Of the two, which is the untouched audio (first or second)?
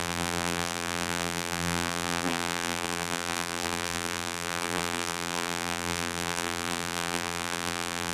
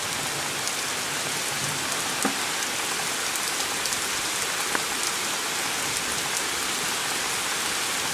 second